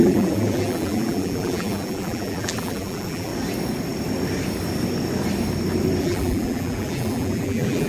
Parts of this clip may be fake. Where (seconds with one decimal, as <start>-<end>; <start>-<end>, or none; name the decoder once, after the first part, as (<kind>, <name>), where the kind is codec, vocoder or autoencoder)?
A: 0.0-3.3 (vocoder, BigVGAN v2); 6.0-7.9